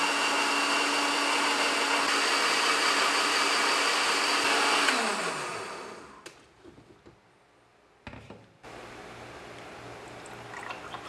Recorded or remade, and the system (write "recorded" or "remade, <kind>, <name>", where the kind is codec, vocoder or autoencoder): recorded